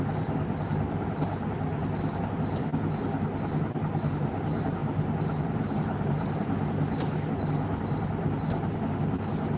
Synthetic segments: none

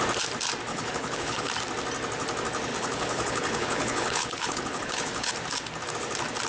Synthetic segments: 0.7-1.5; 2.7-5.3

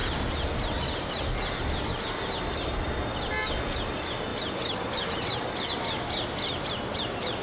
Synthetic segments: none